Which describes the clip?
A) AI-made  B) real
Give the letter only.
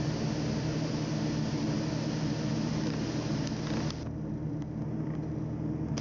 B